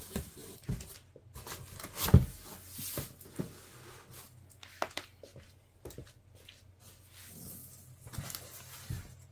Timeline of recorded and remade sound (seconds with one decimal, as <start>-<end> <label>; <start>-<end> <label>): 0.0-9.3 recorded